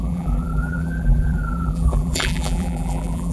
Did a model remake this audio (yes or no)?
yes